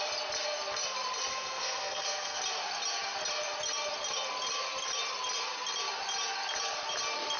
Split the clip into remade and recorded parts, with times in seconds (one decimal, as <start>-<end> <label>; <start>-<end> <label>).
0.0-1.3 recorded; 1.3-2.4 remade; 2.4-7.4 recorded